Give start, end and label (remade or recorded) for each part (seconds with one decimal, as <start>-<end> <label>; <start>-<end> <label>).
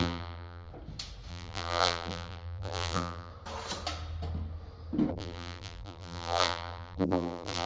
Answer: 0.0-0.7 remade; 0.7-1.3 recorded; 1.3-3.3 remade; 3.3-5.1 recorded; 5.1-7.7 remade